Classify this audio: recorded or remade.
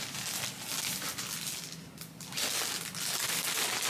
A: recorded